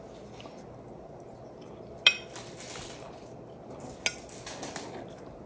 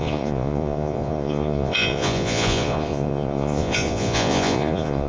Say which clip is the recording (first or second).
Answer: first